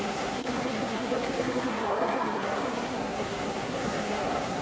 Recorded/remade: remade